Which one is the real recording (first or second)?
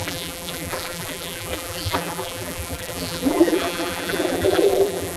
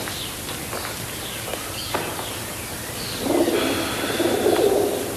second